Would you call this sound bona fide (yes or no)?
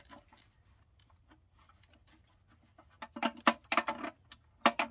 yes